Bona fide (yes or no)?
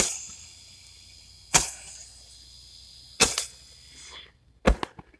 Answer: yes